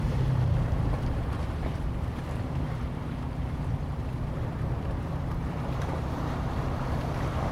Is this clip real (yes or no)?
no